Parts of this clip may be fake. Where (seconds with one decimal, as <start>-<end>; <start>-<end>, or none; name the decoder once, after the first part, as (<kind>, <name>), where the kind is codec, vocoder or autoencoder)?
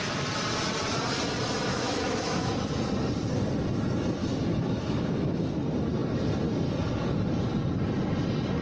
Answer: 1.7-2.8 (autoencoder, DAC-VAE); 4.2-5.5